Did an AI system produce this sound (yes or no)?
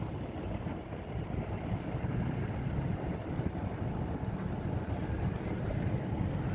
no